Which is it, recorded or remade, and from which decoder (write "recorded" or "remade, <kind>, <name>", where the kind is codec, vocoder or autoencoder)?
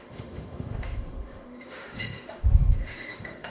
remade, autoencoder, DAC-VAE